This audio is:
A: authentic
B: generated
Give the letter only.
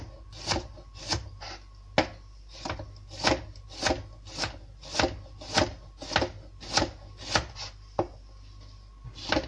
A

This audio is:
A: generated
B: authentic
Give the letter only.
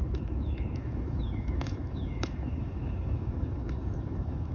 A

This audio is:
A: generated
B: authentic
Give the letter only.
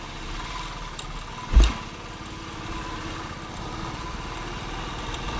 B